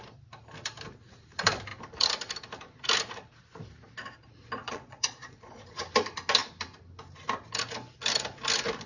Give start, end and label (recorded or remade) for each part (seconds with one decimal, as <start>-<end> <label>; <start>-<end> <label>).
0.0-4.6 recorded; 4.6-5.8 remade; 5.8-8.9 recorded